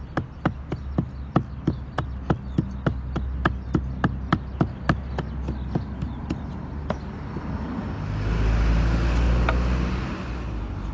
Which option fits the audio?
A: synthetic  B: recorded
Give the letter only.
B